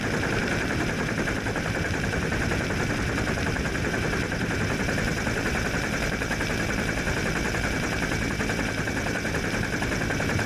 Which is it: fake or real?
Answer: real